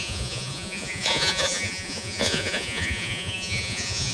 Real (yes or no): no